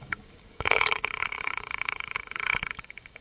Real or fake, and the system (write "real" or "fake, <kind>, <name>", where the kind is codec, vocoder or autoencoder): fake, codec, DAC